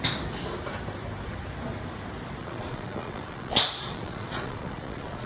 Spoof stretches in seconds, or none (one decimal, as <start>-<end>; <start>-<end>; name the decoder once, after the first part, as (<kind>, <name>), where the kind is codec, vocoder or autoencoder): 2.4-5.3 (vocoder, Vocos)